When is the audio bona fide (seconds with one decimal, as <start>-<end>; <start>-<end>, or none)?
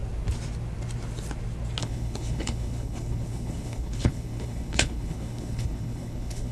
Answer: 0.0-1.8